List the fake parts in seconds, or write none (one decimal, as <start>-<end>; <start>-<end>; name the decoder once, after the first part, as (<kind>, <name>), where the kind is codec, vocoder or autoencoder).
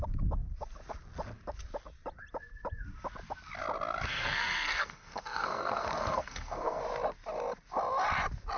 4.1-6.8 (codec, SNAC)